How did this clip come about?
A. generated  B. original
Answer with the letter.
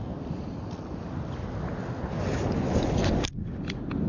B